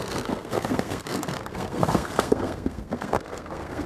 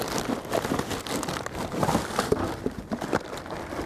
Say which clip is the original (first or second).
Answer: second